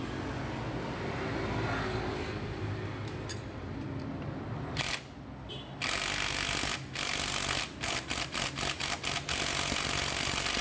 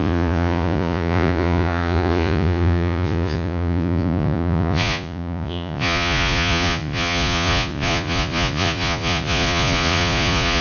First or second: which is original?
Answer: first